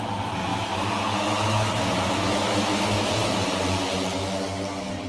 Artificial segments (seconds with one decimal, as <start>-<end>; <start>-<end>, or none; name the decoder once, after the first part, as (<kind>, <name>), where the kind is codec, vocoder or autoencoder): 0.5-3.1 (autoencoder, DAC-VAE)